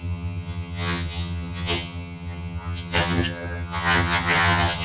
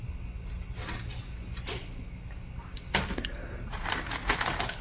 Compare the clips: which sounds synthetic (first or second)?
first